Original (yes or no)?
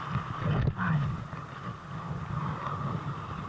yes